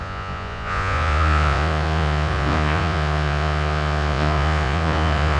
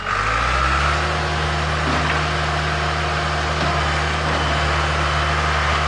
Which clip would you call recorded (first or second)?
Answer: second